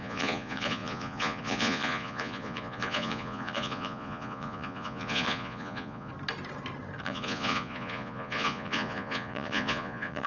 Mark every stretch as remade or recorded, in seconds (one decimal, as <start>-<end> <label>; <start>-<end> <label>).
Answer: 0.0-6.1 remade; 6.1-7.0 recorded; 7.0-10.3 remade